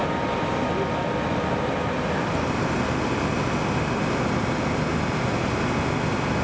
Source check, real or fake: real